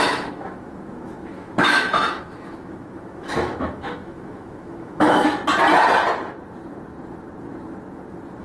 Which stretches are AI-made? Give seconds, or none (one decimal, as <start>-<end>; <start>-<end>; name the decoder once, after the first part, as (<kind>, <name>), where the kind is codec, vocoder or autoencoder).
0.0-5.4 (autoencoder, DAC-VAE)